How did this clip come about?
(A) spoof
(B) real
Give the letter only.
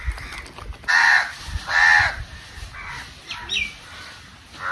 B